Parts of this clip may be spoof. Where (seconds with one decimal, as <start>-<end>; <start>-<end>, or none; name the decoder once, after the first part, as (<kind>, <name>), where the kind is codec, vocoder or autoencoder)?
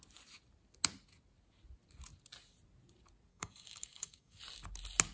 3.3-4.4 (codec, DAC)